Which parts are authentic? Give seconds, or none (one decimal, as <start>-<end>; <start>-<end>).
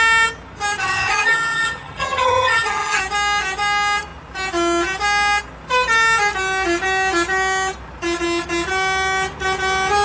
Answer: 0.0-0.8; 3.0-10.0